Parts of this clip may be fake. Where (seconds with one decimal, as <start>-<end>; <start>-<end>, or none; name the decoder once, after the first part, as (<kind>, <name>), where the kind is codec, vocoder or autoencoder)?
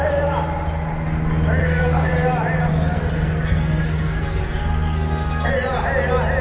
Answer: 1.6-2.1 (codec, SNAC); 2.7-5.5